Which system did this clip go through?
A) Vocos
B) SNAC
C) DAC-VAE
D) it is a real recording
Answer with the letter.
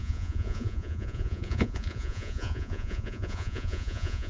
A